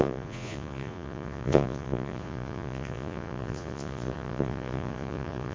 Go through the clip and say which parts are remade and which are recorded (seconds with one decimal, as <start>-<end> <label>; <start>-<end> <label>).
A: 0.0-5.5 remade